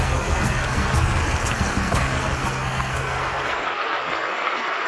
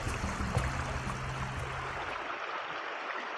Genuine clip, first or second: second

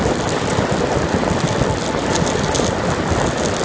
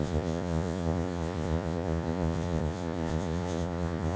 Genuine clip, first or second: first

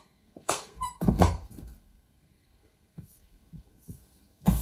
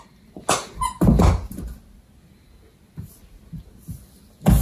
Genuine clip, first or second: second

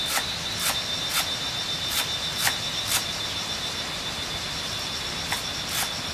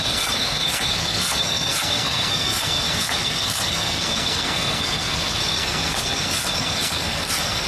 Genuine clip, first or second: first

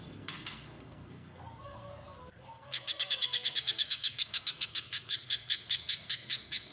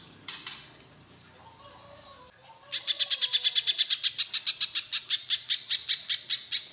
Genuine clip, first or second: second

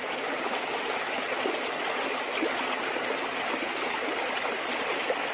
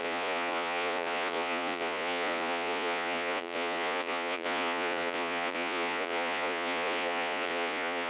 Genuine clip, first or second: first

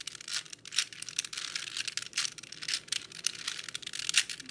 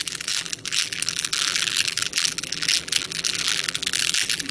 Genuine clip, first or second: first